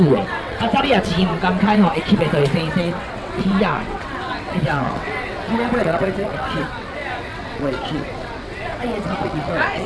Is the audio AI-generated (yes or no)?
yes